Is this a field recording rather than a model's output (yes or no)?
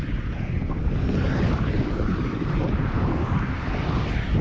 yes